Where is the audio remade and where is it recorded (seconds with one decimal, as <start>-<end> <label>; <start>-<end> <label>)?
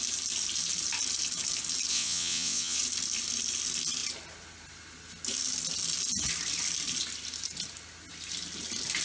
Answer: 0.0-1.9 recorded; 1.9-2.8 remade; 2.8-9.0 recorded